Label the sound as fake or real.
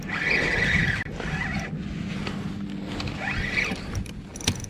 real